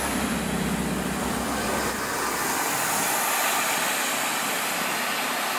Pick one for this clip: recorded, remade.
recorded